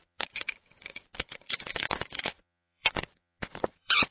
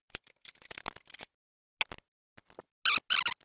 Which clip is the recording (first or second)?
second